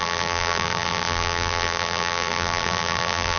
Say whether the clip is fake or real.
fake